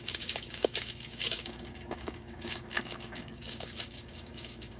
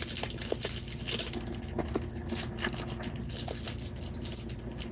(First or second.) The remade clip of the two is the first